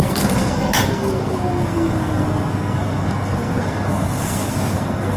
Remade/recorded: remade